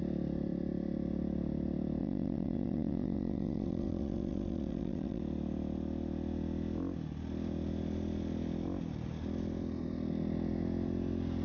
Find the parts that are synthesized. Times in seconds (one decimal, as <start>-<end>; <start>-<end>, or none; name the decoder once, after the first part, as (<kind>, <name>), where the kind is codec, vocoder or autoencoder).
2.0-5.2 (vocoder, WaveNeXt)